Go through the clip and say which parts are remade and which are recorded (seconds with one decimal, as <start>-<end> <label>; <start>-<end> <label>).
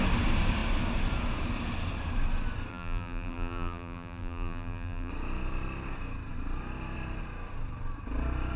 0.0-2.7 recorded; 2.7-5.1 remade; 5.1-8.6 recorded